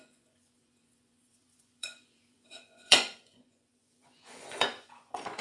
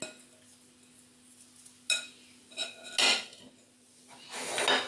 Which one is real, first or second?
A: second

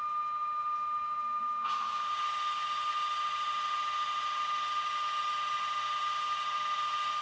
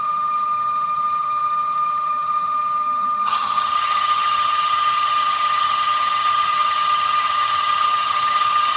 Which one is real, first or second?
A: first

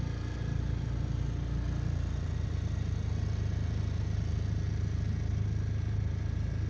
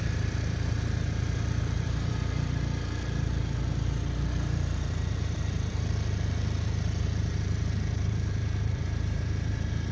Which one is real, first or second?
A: first